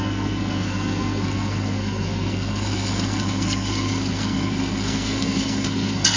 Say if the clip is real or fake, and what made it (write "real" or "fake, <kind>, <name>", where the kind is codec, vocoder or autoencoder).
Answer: fake, codec, SNAC